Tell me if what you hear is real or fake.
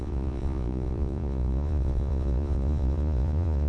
fake